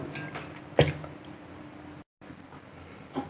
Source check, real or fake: real